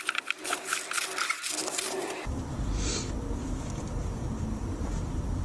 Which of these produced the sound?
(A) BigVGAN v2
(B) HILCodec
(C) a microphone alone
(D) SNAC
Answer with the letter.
A